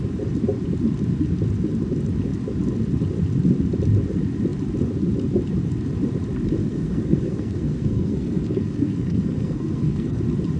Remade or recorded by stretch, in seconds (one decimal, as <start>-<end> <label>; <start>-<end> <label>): 0.0-6.6 recorded; 6.6-10.2 remade; 10.2-10.6 recorded